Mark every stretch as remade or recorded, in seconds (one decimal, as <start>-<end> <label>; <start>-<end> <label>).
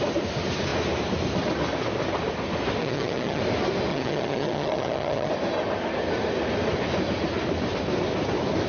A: 0.0-2.8 recorded; 2.8-3.4 remade; 3.4-3.9 recorded; 3.9-5.3 remade; 5.3-8.7 recorded